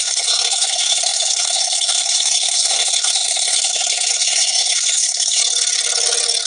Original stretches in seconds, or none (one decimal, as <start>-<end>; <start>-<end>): 5.4-6.5